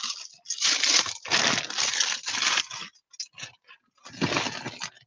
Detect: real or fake real